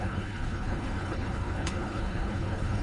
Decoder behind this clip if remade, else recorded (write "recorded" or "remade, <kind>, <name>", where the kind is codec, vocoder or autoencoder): remade, codec, HILCodec